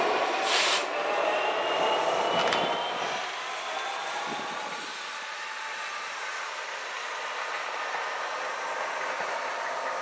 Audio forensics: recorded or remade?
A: recorded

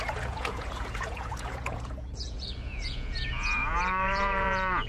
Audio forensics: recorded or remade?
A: remade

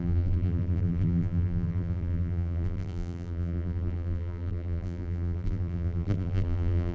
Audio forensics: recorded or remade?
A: remade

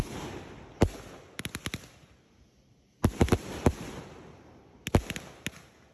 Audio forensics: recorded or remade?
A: recorded